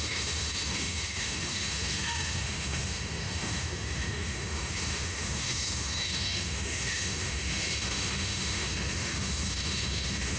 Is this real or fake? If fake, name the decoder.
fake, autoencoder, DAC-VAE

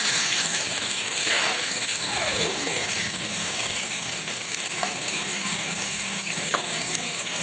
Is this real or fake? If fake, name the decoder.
fake, codec, DAC